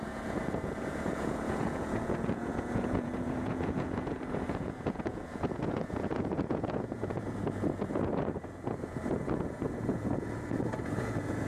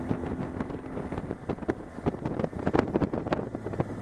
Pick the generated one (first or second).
first